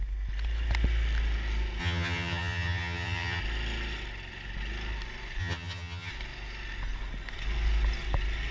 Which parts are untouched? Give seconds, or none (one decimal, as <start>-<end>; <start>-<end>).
0.0-1.8; 3.4-5.4; 6.1-8.5